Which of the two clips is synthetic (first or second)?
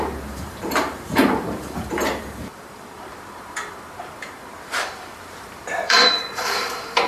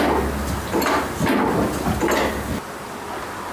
first